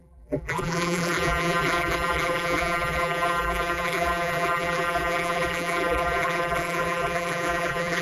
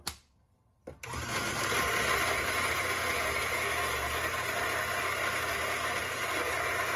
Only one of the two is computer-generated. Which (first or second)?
first